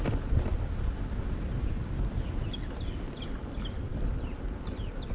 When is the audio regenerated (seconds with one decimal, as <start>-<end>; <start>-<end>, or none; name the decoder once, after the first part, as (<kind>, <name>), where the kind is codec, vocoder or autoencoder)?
0.5-1.2 (vocoder, BigVGAN v2); 1.8-2.5; 3.9-5.1